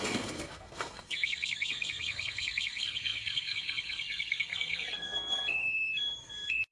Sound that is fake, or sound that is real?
fake